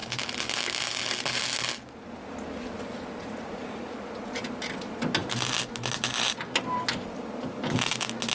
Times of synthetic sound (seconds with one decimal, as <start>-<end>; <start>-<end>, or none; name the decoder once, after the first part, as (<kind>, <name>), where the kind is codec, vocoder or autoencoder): 3.2-4.4 (vocoder, Vocos)